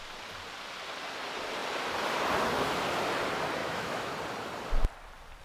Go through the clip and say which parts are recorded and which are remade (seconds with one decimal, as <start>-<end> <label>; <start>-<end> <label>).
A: 0.0-3.6 recorded; 3.6-4.1 remade; 4.1-5.4 recorded